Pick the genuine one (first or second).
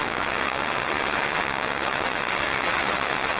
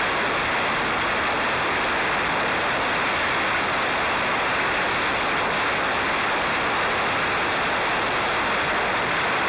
second